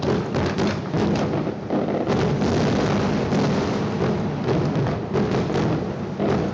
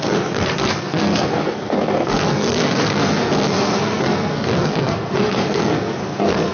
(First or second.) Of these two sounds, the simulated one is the second